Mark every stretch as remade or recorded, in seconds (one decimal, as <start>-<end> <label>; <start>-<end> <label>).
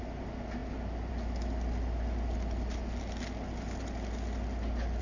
0.0-5.0 recorded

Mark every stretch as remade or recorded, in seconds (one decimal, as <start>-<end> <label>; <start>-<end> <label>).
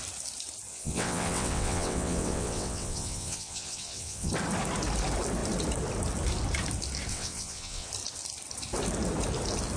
0.0-0.7 recorded; 0.7-4.3 remade; 4.3-7.1 recorded; 7.1-7.9 remade; 7.9-9.8 recorded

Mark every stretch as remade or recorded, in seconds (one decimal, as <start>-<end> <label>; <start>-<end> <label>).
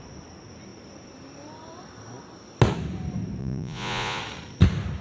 0.0-3.4 recorded; 3.4-4.2 remade; 4.2-5.0 recorded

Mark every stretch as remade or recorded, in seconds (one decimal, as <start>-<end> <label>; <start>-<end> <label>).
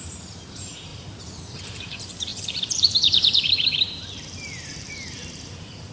0.0-5.9 remade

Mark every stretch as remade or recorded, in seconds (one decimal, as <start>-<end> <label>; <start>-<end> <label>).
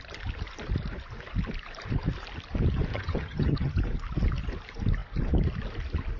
0.0-2.9 recorded; 2.9-3.8 remade; 3.8-6.2 recorded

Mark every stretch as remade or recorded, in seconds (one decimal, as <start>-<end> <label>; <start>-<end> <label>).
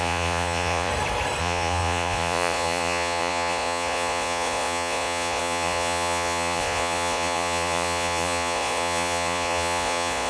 0.0-0.9 remade; 0.9-1.4 recorded; 1.4-10.3 remade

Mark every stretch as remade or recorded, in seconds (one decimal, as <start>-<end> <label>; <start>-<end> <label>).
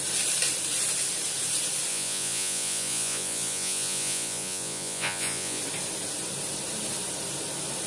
0.0-1.9 recorded; 1.9-5.6 remade; 5.6-7.9 recorded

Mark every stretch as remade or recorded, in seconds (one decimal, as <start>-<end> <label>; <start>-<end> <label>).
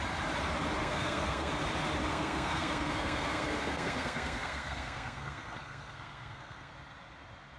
0.0-0.8 recorded; 0.8-1.5 remade; 1.5-2.1 recorded; 2.1-6.7 remade; 6.7-7.6 recorded